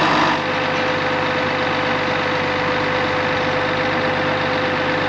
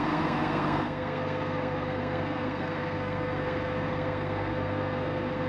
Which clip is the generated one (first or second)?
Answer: second